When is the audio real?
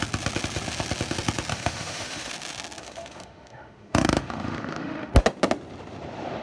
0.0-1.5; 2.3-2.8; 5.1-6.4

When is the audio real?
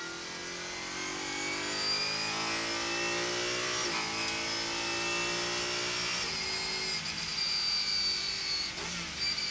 0.0-9.5